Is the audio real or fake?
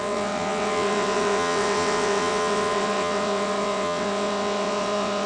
fake